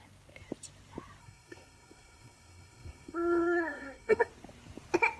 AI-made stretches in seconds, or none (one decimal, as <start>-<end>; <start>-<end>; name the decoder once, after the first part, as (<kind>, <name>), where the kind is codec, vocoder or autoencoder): 1.2-4.3 (codec, SNAC)